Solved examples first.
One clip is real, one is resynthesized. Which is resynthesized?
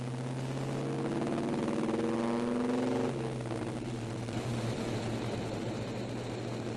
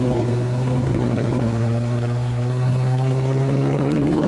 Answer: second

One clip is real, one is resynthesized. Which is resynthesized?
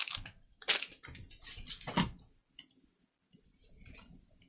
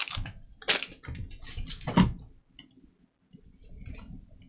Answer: first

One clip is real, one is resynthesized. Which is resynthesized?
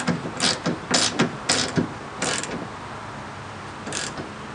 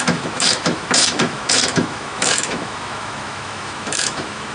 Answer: second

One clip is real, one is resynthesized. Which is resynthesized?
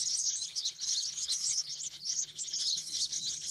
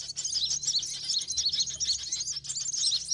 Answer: first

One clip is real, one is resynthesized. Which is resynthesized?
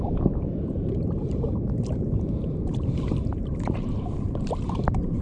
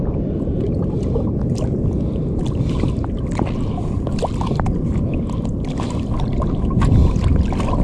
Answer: first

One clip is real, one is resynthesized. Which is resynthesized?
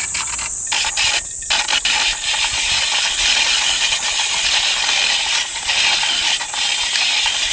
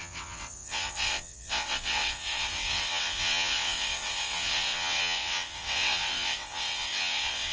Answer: second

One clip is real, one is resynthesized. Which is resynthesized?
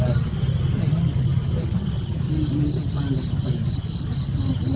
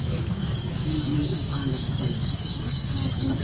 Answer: second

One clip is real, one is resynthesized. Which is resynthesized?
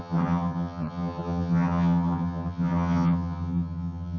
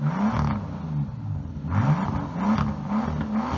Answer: first